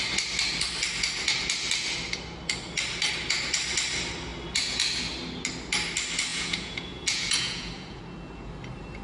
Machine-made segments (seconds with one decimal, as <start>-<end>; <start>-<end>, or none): 6.3-8.0